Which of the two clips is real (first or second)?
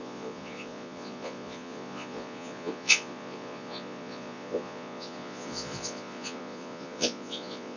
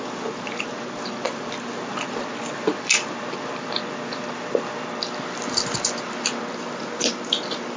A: second